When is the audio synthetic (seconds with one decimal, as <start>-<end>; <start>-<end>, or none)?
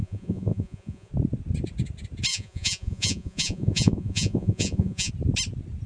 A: 0.0-1.1; 2.3-5.1